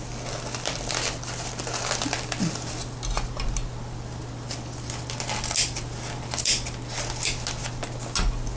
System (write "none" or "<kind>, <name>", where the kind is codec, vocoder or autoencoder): none